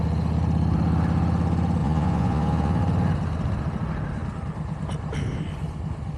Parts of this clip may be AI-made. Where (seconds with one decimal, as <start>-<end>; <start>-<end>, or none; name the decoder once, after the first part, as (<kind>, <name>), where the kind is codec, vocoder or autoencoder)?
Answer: 1.8-2.8 (vocoder, Vocos)

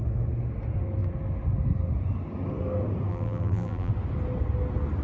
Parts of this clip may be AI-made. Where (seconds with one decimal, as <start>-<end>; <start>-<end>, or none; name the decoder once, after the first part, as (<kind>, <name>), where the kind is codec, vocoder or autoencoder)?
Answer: 3.1-3.9 (vocoder, BigVGAN v2)